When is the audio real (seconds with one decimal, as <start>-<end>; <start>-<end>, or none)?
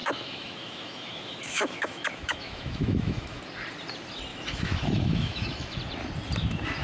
3.4-4.3; 5.8-6.8